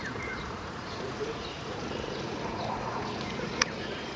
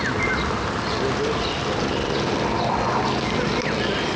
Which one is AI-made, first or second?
first